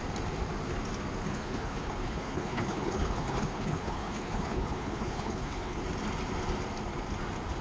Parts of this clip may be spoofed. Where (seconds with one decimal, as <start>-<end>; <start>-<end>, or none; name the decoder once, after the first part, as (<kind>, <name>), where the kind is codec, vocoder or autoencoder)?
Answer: 1.2-5.8 (codec, HILCodec)